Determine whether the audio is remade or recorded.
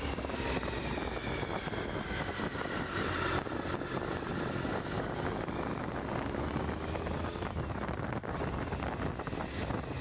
recorded